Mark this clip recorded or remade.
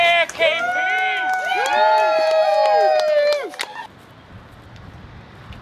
recorded